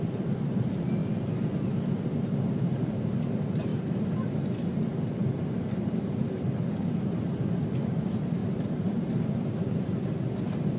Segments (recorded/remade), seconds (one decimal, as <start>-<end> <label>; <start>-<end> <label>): 0.0-1.0 recorded; 1.0-1.7 remade; 1.7-8.4 recorded; 8.4-10.0 remade; 10.0-10.8 recorded